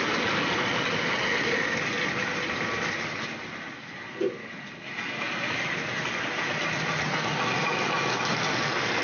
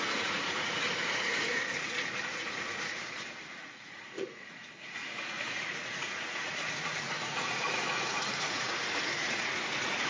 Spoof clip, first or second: second